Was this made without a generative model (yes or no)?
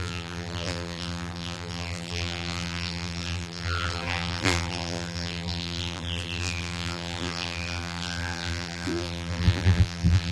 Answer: no